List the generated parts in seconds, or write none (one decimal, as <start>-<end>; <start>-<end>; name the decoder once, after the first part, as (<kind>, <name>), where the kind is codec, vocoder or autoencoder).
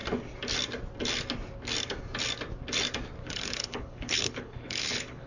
3.2-5.3 (codec, HILCodec)